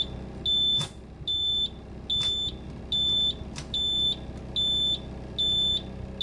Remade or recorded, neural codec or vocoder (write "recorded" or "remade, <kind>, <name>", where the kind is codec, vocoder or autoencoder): recorded